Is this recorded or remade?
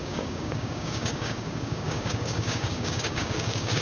remade